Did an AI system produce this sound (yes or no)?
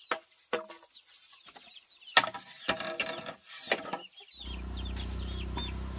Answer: no